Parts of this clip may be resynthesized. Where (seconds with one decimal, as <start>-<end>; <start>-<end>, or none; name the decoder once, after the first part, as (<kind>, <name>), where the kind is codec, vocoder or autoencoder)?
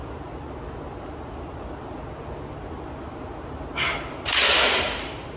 none